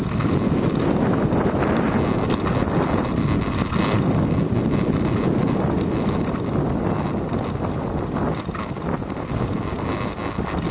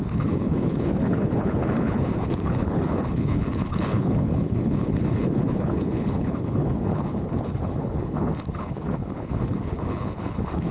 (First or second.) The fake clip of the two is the second